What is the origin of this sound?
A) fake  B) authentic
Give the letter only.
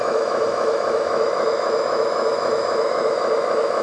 A